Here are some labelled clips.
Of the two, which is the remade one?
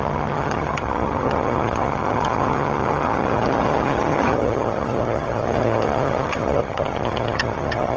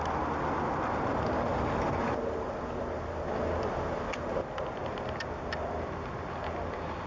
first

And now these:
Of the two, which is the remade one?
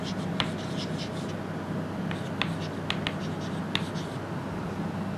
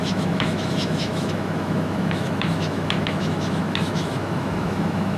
second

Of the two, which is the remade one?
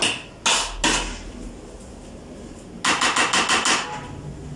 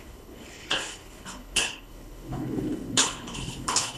second